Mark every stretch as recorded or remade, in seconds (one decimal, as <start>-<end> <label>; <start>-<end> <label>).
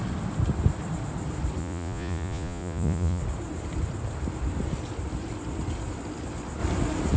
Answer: 0.0-1.6 recorded; 1.6-3.2 remade; 3.2-7.2 recorded